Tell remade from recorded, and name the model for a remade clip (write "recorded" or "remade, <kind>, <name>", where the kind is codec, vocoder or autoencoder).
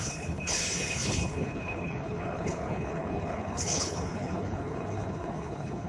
remade, codec, HILCodec